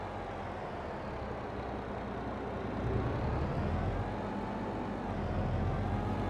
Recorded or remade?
recorded